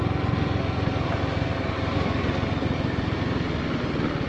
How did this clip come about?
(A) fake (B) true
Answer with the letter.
B